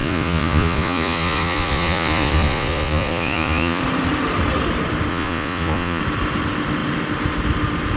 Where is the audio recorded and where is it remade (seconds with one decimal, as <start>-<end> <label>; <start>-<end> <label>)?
0.0-3.8 remade; 3.8-5.1 recorded; 5.1-6.0 remade; 6.0-8.0 recorded